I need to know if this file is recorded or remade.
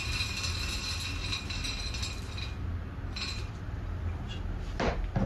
recorded